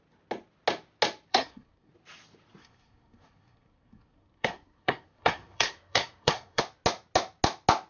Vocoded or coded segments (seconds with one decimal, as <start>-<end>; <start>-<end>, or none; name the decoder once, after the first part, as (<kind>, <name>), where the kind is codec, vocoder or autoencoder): 1.3-1.9 (codec, SNAC); 2.6-6.6